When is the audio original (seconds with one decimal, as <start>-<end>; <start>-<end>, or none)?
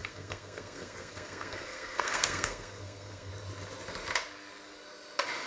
3.3-5.5